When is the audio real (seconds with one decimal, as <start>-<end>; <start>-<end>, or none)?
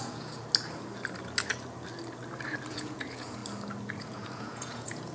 0.4-2.7; 3.4-4.0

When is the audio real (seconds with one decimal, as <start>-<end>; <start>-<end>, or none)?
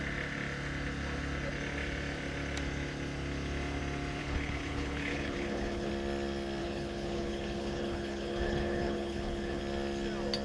0.0-4.2; 5.9-6.6; 9.6-10.4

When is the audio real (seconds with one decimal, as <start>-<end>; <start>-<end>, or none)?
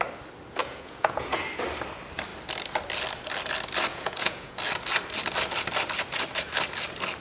0.0-0.6; 1.4-3.9; 4.6-7.2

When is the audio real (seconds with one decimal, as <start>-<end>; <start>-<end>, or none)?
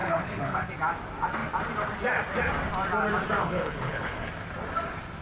0.7-3.4; 4.3-5.2